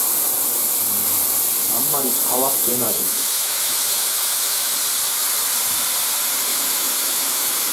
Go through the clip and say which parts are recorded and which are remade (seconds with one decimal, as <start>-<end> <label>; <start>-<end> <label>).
0.0-2.7 recorded; 2.7-4.7 remade; 4.7-6.5 recorded; 6.5-7.7 remade